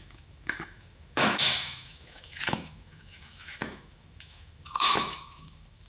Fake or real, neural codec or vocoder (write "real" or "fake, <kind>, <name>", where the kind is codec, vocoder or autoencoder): fake, autoencoder, DAC-VAE